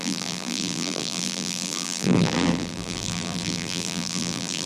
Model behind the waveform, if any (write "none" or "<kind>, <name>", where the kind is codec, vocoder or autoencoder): vocoder, BigVGAN v2